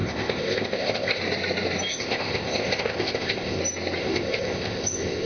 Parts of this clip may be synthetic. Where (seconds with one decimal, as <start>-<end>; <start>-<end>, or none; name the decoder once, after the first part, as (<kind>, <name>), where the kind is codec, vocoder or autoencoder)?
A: 0.0-1.2 (codec, ZipCodec); 1.9-3.6; 4.0-5.3